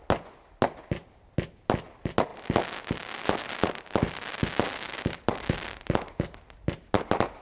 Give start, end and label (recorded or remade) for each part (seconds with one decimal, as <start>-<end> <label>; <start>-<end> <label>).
0.0-7.4 recorded